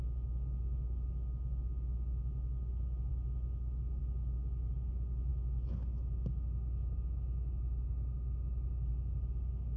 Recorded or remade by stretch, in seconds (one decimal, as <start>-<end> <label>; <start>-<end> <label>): 0.0-9.8 recorded